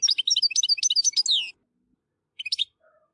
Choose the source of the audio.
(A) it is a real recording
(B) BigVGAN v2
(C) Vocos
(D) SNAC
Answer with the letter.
A